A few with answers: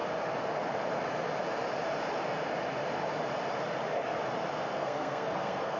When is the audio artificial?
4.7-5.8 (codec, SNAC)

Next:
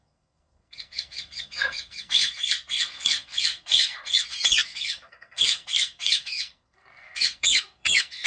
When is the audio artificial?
0.0-8.3 (codec, SNAC)

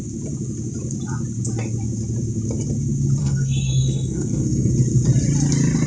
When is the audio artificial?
3.2-4.7 (codec, SNAC)

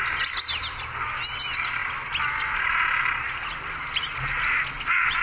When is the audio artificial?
none